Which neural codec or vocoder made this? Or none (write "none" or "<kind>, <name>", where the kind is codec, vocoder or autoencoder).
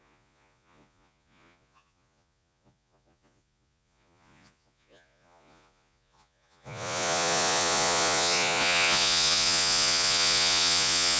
vocoder, Vocos